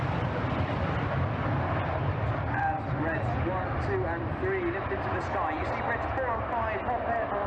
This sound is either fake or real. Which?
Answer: real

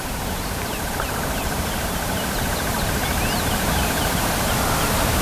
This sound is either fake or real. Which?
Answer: fake